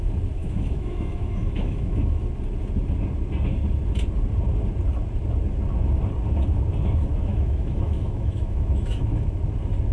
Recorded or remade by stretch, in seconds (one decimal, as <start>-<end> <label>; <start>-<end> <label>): 0.0-0.4 recorded; 0.4-2.2 remade; 2.2-7.3 recorded; 7.3-9.4 remade; 9.4-9.9 recorded